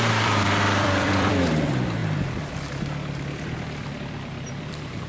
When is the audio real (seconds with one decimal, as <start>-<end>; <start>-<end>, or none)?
2.0-4.0